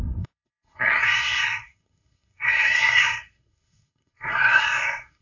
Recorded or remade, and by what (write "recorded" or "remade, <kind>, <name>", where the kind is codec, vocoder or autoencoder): remade, codec, SNAC